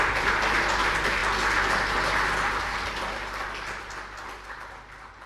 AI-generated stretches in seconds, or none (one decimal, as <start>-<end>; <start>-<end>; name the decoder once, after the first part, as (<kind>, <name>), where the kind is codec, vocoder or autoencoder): none